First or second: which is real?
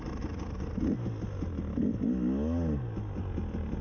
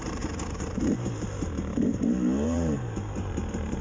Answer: first